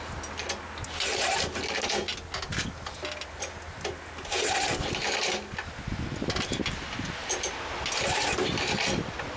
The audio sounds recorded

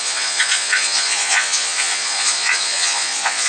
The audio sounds remade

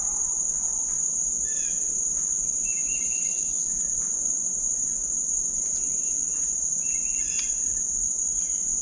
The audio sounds recorded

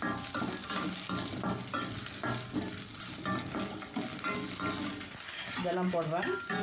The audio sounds recorded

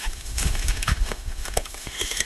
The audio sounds remade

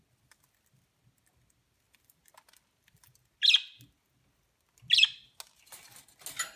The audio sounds recorded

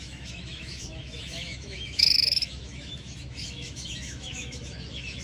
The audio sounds remade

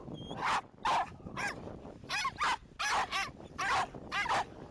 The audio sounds recorded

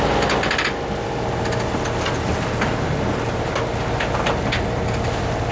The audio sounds recorded